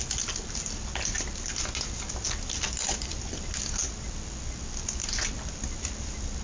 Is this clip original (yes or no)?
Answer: yes